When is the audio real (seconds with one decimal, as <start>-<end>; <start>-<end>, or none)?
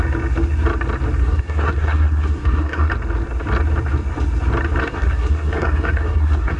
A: 0.0-1.2; 2.9-4.8